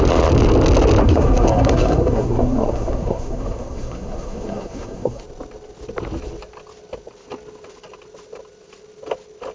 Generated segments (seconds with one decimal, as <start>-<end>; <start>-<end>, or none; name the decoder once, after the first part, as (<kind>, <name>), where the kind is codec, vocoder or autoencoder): 1.0-5.2 (codec, SNAC)